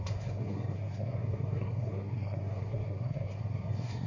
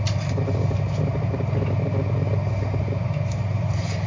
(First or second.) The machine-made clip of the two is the first